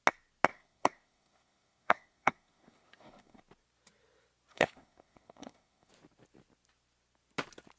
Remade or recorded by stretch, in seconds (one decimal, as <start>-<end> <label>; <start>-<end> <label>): 0.0-0.5 recorded; 0.5-3.4 remade; 3.4-4.5 recorded; 4.5-5.9 remade; 5.9-7.8 recorded